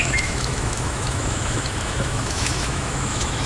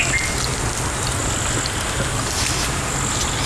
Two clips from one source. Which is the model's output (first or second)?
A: first